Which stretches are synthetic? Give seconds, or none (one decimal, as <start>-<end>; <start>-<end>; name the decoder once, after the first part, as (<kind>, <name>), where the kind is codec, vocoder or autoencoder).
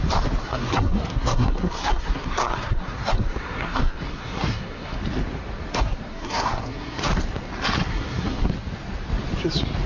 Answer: 0.4-5.0 (codec, SNAC); 5.7-7.0; 7.8-8.5